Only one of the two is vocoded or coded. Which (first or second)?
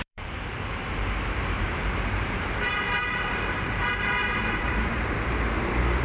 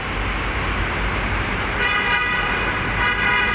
first